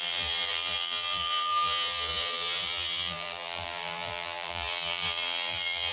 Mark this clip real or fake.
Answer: fake